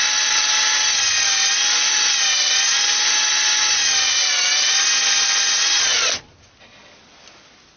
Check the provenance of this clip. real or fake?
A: real